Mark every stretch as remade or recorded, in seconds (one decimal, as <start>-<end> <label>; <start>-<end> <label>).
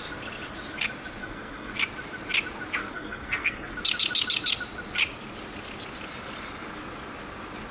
0.0-1.2 recorded; 1.2-1.7 remade; 1.7-2.8 recorded; 2.8-3.7 remade; 3.7-7.7 recorded